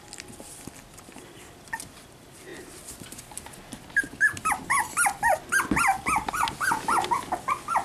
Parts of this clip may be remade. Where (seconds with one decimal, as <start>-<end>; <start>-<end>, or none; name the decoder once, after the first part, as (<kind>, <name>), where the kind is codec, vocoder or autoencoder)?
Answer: none